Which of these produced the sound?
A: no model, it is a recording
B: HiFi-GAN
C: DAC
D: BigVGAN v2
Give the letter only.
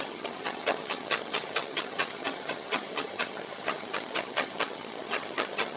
B